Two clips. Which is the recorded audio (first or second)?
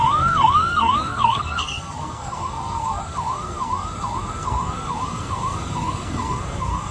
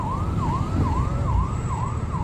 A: second